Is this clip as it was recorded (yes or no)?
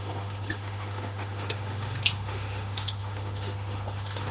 no